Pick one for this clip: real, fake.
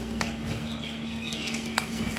fake